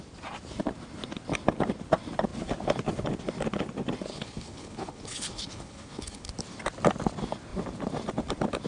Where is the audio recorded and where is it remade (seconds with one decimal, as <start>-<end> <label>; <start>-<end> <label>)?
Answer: 0.0-4.1 recorded; 4.1-6.3 remade; 6.3-8.7 recorded